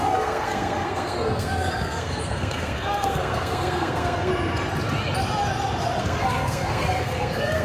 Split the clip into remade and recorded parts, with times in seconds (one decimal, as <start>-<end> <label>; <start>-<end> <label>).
0.0-4.3 remade; 4.3-6.0 recorded; 6.0-7.6 remade